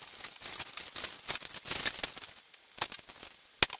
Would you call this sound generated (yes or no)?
no